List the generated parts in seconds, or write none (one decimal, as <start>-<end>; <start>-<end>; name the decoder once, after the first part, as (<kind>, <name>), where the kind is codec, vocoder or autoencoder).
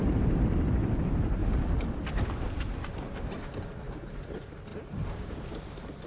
0.0-1.4 (vocoder, BigVGAN v2); 2.5-6.1